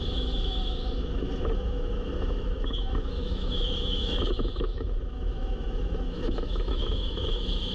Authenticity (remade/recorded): remade